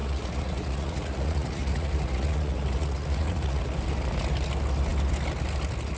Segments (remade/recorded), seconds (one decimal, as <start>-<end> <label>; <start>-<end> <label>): 0.0-3.6 remade; 3.6-6.0 recorded